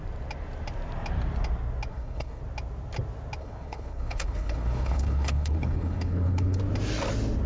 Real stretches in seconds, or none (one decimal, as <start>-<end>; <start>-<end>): 0.0-1.9; 2.4-3.4; 6.6-7.5